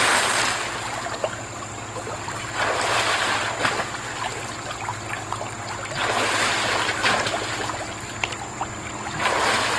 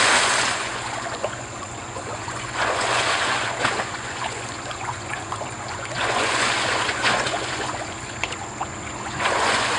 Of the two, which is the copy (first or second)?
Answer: second